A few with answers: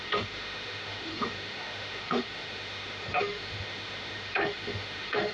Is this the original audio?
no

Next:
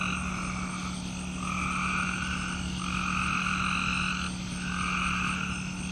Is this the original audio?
yes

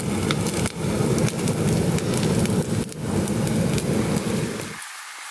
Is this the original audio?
yes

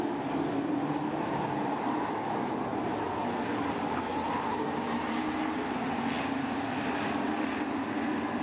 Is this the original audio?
yes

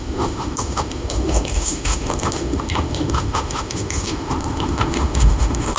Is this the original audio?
no